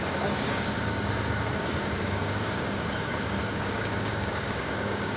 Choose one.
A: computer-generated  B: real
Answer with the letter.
A